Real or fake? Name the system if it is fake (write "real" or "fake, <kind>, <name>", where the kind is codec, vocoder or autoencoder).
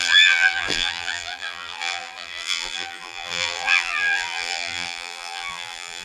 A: fake, vocoder, BigVGAN v2